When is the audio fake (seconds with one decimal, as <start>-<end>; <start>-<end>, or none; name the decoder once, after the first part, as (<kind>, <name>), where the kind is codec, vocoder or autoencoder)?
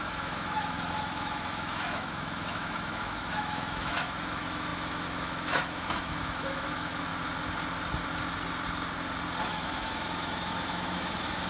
0.0-7.1 (autoencoder, DAC-VAE); 9.4-11.5